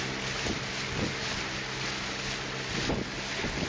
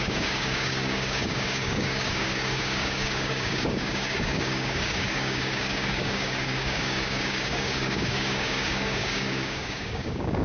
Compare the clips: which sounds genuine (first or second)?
first